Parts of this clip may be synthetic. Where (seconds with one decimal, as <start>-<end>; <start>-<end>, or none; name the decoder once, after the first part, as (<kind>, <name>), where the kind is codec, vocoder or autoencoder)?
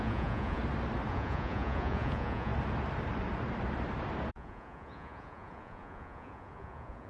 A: 0.0-0.6 (vocoder, Vocos); 1.1-2.5; 4.3-7.1